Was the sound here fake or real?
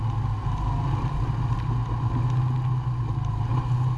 real